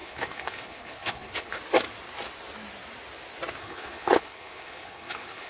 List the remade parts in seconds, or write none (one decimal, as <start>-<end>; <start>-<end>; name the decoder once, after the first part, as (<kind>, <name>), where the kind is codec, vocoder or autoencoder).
0.0-1.6 (codec, HILCodec); 3.6-5.5